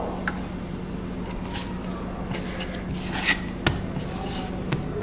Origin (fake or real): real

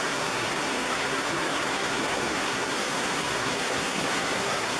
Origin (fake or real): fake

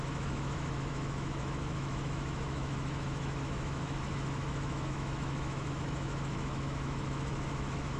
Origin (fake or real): fake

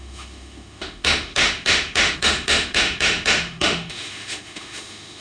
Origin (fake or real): fake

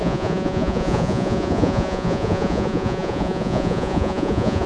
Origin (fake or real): fake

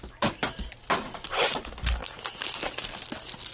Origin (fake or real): real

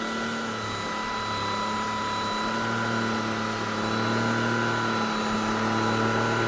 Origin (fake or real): real